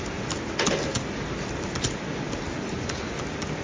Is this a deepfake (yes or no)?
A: no